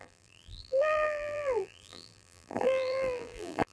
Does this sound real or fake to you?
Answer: fake